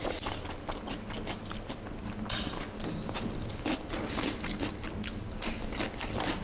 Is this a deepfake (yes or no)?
no